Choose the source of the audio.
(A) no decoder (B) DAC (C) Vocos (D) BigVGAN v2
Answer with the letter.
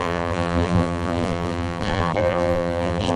D